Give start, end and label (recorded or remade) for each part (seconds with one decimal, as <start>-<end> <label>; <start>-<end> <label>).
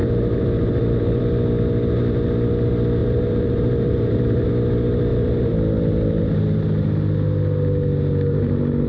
0.0-1.2 remade; 1.2-3.0 recorded; 3.0-4.5 remade; 4.5-5.1 recorded; 5.1-6.2 remade; 6.2-8.9 recorded